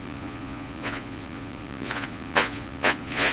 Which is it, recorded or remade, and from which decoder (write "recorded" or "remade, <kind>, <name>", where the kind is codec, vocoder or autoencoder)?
remade, vocoder, Vocos